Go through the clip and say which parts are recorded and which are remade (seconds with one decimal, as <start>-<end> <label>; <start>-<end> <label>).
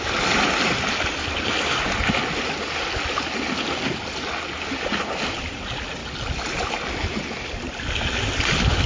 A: 0.0-8.9 recorded